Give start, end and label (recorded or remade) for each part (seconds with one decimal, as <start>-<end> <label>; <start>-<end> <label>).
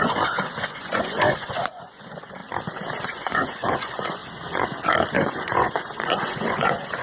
0.0-2.4 remade; 2.4-3.0 recorded; 3.0-4.2 remade; 4.2-5.1 recorded; 5.1-7.0 remade